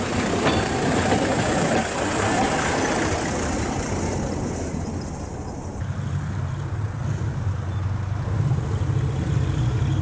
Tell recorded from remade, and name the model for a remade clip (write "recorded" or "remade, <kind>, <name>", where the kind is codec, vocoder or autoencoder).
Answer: recorded